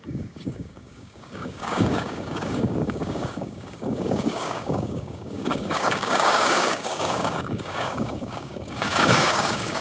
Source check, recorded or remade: remade